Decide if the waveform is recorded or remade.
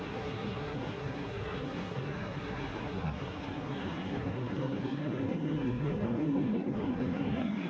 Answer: remade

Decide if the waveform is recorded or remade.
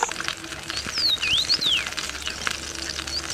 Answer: recorded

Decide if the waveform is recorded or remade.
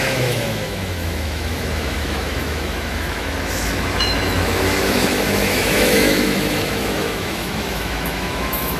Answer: remade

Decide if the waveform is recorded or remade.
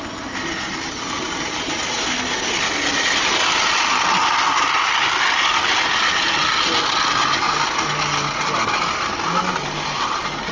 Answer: recorded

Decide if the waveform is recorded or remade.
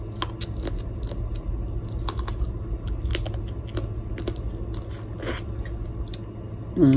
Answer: recorded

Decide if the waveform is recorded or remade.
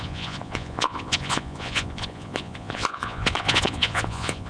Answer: remade